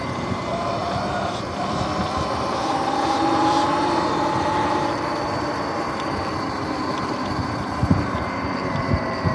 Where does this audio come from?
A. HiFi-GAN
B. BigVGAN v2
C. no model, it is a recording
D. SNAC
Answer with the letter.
B